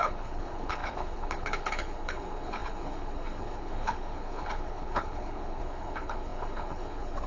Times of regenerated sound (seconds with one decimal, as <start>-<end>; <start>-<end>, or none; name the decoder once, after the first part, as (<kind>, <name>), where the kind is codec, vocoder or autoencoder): 0.0-7.3 (codec, HILCodec)